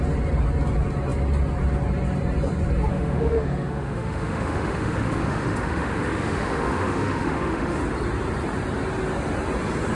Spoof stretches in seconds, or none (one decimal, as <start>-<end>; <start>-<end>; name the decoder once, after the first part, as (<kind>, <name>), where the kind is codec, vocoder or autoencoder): 2.9-7.8 (autoencoder, DAC-VAE)